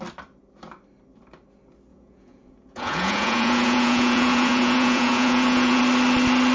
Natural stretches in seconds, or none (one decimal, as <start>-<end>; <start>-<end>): 0.0-1.9; 5.8-6.5